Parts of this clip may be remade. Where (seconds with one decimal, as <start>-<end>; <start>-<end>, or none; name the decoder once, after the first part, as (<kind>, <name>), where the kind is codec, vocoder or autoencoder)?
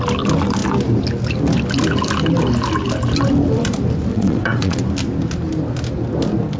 4.1-4.8 (vocoder, WaveNeXt)